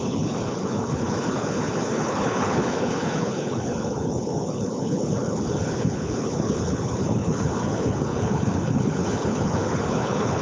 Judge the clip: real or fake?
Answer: fake